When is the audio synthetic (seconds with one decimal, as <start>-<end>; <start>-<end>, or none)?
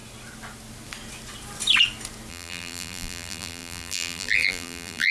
2.3-5.1